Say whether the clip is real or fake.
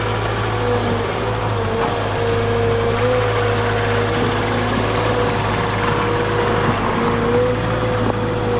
real